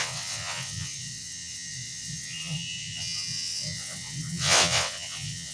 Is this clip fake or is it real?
fake